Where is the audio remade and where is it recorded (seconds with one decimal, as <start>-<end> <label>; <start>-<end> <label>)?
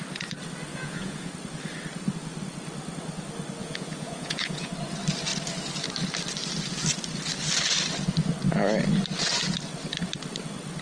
0.0-0.7 recorded; 0.7-1.3 remade; 1.3-3.6 recorded; 3.6-4.7 remade; 4.7-10.8 recorded